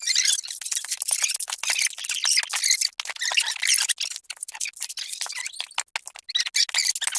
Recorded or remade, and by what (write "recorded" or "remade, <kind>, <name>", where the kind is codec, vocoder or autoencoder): recorded